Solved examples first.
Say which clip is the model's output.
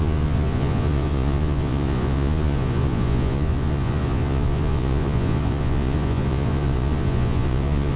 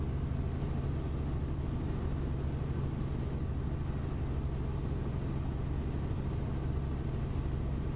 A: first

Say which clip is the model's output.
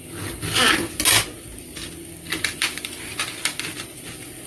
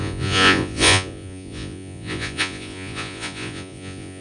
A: second